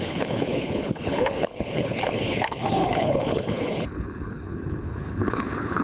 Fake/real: fake